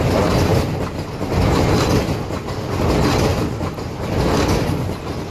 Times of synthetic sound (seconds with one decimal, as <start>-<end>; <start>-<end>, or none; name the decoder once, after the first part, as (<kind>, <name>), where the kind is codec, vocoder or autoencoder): 0.5-2.8 (vocoder, BigVGAN v2); 3.3-4.2